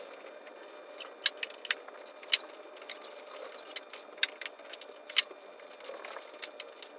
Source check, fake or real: real